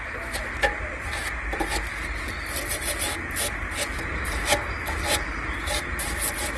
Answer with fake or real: real